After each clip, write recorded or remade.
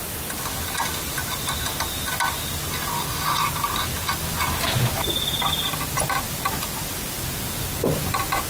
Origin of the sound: recorded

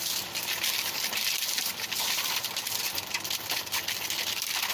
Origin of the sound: remade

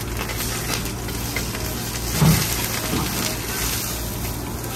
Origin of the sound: recorded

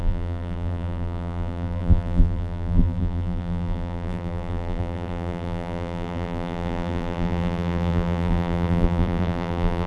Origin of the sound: remade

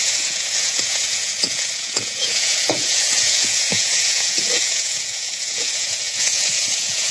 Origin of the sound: remade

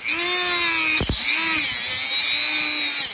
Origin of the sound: recorded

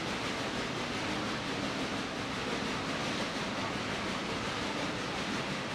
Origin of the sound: recorded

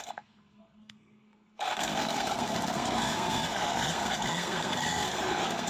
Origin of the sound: remade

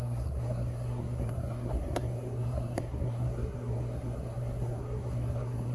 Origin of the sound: remade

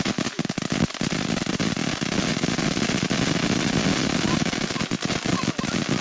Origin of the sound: recorded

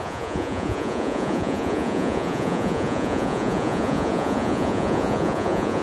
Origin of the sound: remade